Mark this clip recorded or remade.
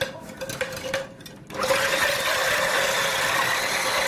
recorded